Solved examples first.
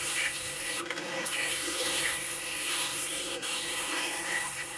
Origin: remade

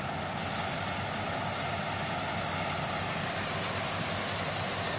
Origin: recorded